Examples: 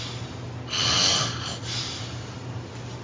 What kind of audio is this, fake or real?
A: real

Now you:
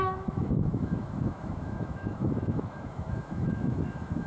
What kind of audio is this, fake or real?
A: fake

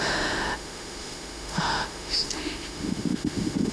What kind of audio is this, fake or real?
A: fake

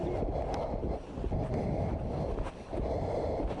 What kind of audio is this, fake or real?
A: real